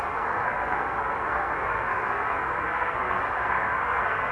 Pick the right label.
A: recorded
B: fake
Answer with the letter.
B